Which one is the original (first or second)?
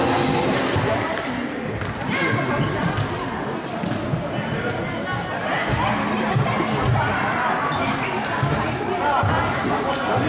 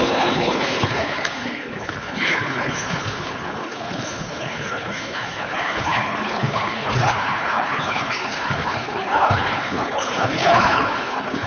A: first